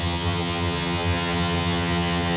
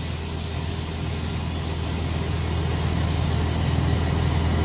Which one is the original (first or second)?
second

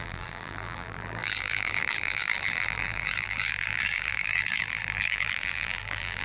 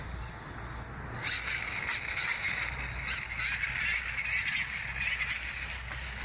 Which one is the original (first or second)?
second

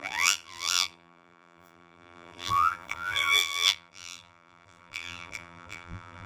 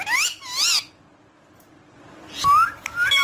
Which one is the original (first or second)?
second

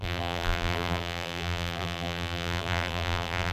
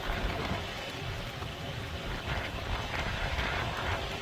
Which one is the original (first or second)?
second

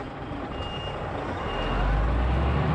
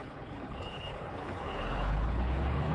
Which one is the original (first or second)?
first